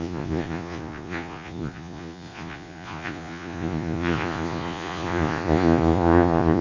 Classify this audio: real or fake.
fake